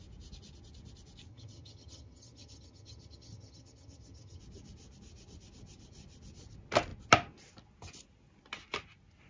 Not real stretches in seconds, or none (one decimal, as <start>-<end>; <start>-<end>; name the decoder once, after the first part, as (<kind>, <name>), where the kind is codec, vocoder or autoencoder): 1.3-4.4 (vocoder, HiFi-GAN)